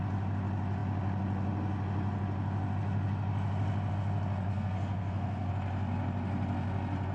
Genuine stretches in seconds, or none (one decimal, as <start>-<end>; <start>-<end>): 0.0-4.5; 5.5-7.1